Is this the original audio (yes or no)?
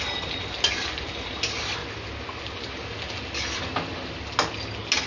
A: yes